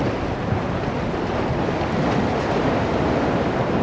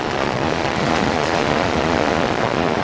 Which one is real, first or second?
first